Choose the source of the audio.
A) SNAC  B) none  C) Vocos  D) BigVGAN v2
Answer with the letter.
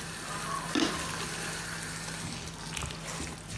B